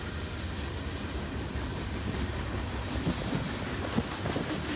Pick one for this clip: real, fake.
real